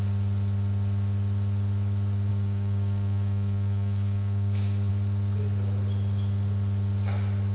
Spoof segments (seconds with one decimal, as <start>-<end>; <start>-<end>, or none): 2.3-4.9